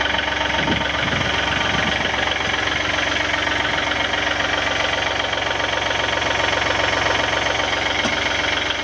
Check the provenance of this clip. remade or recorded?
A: recorded